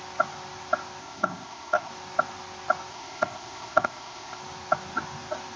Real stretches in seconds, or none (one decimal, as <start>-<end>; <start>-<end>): 0.0-1.0; 1.9-2.9; 4.4-5.6